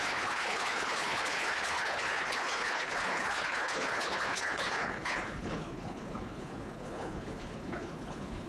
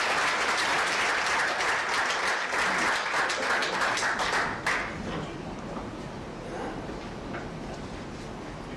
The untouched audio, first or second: second